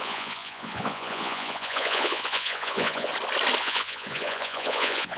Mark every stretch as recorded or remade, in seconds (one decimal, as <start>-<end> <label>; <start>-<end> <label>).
0.0-3.1 remade; 3.1-3.6 recorded; 3.6-5.2 remade